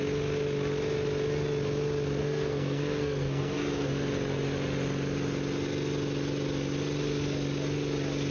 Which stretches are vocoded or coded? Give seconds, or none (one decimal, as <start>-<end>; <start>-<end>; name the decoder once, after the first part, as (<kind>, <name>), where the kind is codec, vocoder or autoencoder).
2.2-3.9 (codec, SNAC)